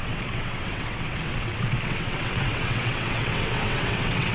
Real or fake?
fake